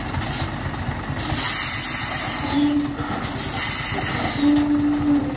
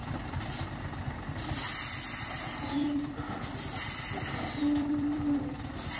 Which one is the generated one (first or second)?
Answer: second